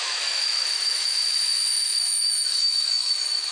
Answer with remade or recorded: remade